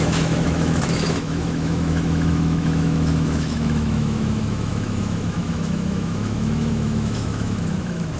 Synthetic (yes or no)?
yes